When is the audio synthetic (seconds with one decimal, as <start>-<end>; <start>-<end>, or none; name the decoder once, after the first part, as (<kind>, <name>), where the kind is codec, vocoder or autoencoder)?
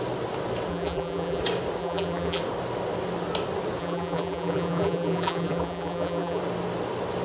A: 0.7-1.4 (vocoder, BigVGAN v2); 1.8-2.4; 3.8-6.4